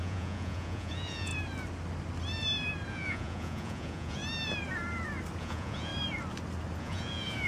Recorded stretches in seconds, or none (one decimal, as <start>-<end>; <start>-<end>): 1.3-2.9; 4.2-5.4; 5.9-6.8